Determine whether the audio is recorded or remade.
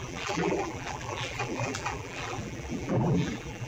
remade